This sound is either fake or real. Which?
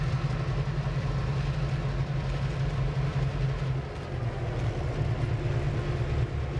real